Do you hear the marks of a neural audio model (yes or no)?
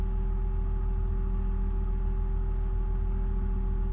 no